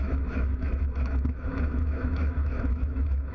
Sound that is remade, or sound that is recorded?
remade